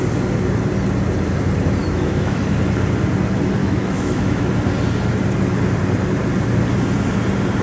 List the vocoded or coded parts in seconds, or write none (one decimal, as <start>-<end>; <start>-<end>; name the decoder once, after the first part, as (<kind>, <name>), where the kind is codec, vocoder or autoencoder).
1.8-2.4 (autoencoder, DAC-VAE); 3.6-4.5